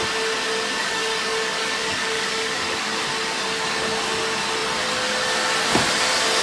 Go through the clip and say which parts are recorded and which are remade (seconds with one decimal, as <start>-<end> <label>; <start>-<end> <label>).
0.0-0.8 recorded; 0.8-3.0 remade; 3.0-6.4 recorded